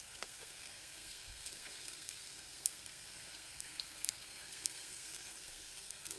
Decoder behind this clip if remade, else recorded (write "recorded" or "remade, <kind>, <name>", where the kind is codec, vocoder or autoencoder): remade, codec, SNAC